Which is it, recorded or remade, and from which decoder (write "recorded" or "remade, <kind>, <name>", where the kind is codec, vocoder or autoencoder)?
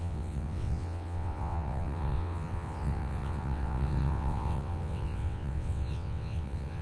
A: remade, vocoder, WaveNeXt